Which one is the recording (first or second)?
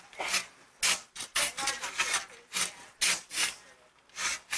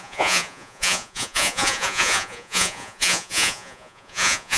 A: first